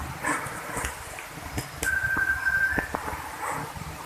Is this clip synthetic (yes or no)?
no